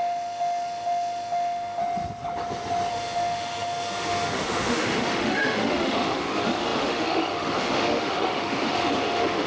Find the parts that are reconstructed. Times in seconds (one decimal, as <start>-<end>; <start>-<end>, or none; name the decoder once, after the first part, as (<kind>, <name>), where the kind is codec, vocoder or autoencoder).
0.0-1.8 (autoencoder, DAC-VAE); 2.9-9.5